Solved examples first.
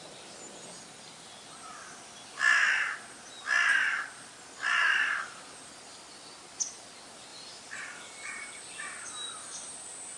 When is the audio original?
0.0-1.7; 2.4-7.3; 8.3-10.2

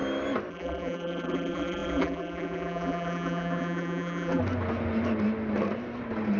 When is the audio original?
0.0-0.5; 4.4-6.4

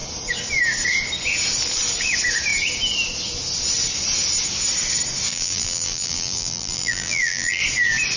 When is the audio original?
0.0-5.3; 7.6-8.2